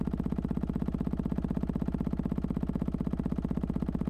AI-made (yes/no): no